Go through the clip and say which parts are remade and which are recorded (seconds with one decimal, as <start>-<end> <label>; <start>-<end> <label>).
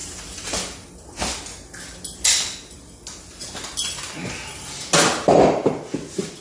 0.0-6.4 recorded